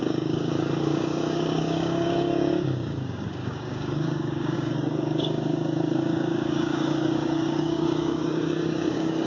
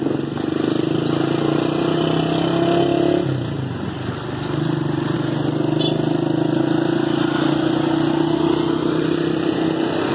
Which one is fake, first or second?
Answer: first